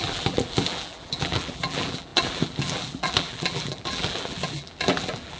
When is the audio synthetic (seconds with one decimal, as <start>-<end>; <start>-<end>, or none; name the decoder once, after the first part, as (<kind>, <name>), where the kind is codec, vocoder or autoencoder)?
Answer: 0.0-5.4 (vocoder, BigVGAN v2)